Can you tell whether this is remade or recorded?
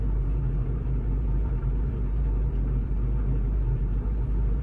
remade